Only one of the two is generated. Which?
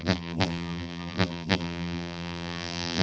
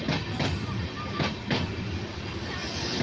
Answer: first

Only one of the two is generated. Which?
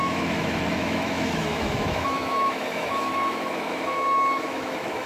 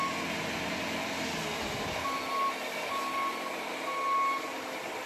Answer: first